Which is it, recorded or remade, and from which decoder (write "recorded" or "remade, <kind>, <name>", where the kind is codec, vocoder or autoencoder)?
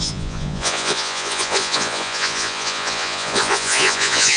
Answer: remade, vocoder, Vocos